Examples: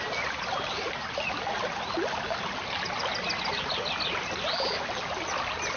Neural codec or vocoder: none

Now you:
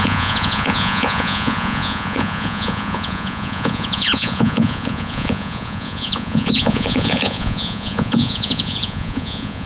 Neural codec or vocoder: vocoder, Vocos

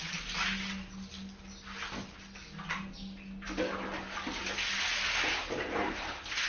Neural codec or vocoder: none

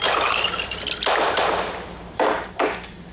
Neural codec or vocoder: none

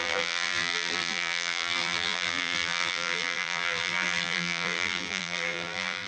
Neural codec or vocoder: vocoder, BigVGAN v2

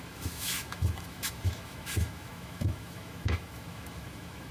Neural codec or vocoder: autoencoder, DAC-VAE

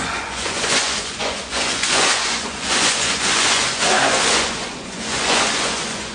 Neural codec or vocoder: vocoder, Vocos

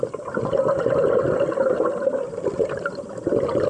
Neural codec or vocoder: none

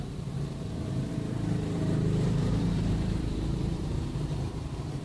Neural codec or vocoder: vocoder, BigVGAN v2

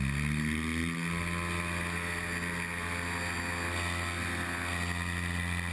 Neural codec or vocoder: none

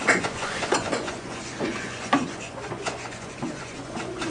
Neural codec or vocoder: vocoder, Vocos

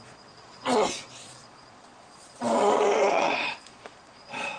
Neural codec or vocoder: vocoder, Vocos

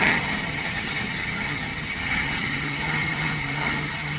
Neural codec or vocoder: vocoder, HiFi-GAN